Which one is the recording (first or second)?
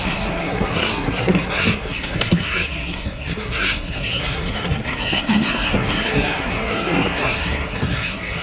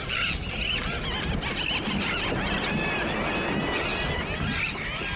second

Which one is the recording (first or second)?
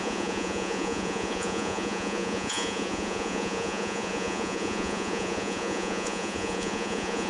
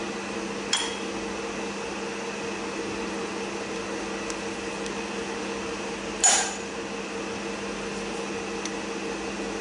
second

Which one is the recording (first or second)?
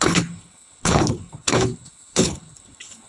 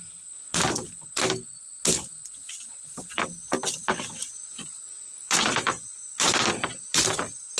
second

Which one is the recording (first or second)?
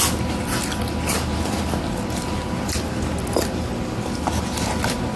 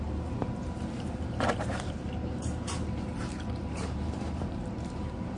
first